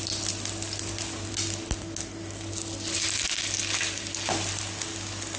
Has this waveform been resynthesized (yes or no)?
no